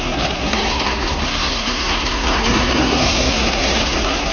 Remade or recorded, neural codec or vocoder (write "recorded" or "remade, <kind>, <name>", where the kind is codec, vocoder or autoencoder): remade, codec, SNAC